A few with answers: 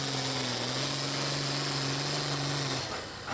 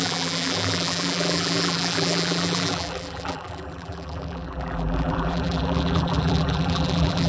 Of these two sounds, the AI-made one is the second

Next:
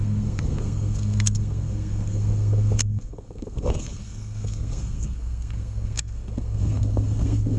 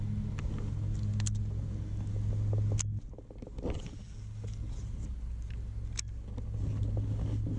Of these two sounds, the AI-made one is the first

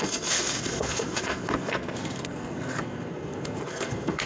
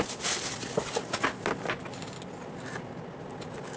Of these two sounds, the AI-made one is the first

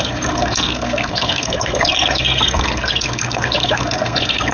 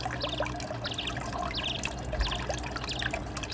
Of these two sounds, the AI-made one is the first